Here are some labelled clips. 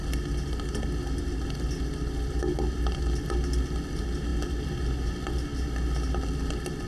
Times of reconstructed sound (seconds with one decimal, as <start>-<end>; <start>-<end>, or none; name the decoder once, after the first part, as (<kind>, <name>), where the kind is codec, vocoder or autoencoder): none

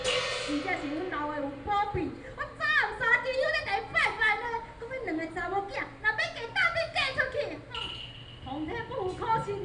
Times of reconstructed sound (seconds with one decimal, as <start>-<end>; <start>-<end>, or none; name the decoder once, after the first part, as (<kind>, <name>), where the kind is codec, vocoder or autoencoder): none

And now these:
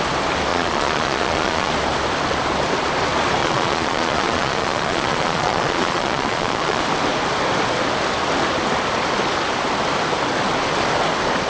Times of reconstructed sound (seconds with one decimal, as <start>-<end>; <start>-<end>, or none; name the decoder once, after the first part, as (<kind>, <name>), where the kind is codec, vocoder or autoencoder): 0.5-1.7 (vocoder, Vocos); 3.4-6.8